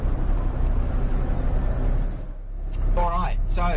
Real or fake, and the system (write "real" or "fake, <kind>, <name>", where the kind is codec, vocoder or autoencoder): real